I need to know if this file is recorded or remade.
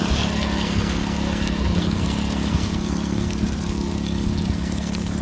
remade